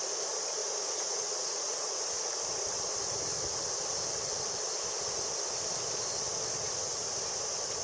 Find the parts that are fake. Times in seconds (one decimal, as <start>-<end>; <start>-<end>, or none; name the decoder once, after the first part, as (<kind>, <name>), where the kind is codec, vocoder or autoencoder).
0.6-2.1 (vocoder, Vocos)